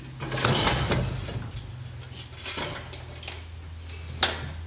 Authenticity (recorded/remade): recorded